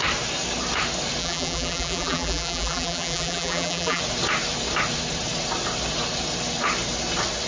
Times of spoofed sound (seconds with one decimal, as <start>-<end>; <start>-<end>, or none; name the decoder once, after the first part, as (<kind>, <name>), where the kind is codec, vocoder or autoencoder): 1.2-4.0 (vocoder, BigVGAN v2)